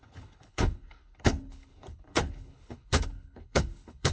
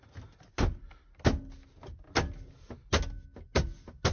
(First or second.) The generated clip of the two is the first